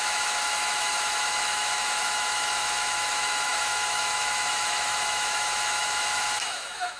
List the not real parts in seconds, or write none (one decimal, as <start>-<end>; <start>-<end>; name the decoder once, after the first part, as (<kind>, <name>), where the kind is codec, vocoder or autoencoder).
0.0-7.0 (autoencoder, DAC-VAE)